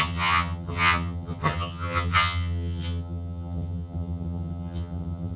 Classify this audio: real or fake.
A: fake